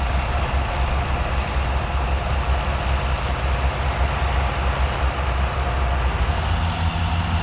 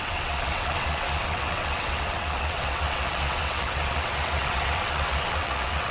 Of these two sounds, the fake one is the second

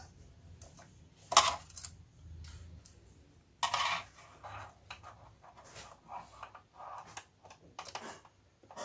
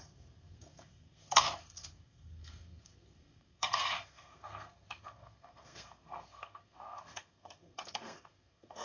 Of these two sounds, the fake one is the second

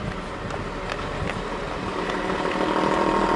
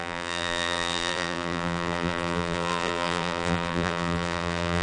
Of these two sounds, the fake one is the second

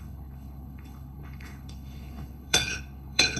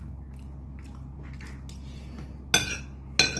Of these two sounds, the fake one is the first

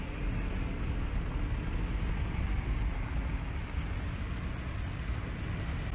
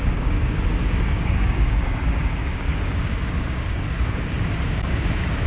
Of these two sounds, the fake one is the second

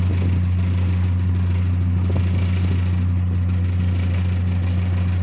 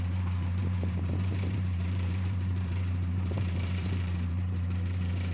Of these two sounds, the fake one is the second